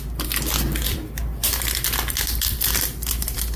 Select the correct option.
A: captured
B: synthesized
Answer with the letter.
A